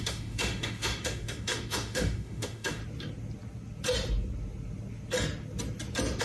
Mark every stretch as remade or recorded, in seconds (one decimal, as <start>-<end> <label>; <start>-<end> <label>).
0.0-2.8 remade; 2.8-6.2 recorded